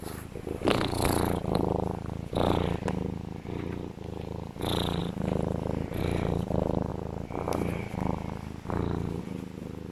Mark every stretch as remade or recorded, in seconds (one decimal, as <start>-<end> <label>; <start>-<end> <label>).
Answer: 0.0-9.9 recorded